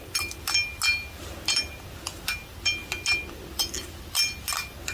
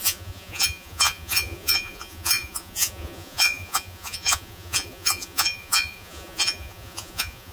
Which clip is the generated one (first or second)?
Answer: second